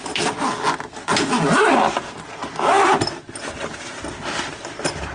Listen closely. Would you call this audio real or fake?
real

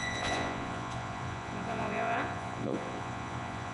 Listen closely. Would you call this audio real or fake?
fake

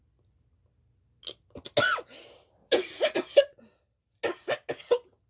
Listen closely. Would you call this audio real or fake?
real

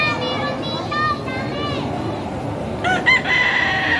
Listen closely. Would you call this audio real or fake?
real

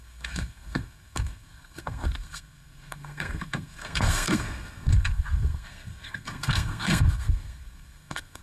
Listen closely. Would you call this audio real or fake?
fake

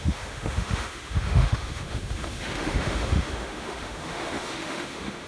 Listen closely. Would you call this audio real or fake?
fake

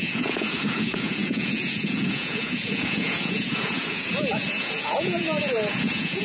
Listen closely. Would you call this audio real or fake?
fake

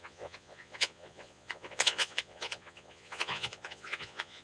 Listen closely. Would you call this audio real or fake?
fake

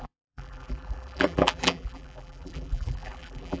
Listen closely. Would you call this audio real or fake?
fake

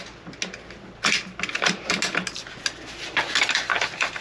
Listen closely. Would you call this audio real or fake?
real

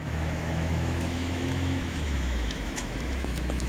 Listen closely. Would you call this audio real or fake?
fake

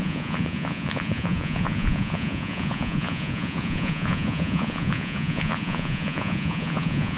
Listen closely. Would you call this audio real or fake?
fake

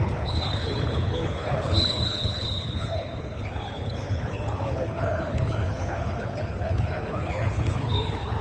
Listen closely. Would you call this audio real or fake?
fake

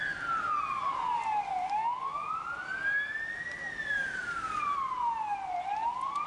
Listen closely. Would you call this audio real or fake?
real